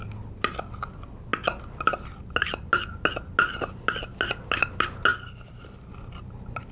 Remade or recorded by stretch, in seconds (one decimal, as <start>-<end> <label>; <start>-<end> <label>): 0.0-6.7 recorded